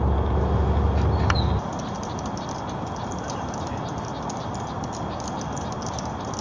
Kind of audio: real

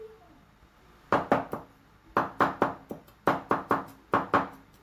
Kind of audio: real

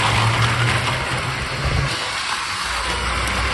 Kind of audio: real